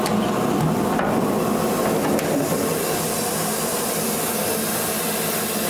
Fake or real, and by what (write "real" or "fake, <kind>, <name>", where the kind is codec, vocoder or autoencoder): real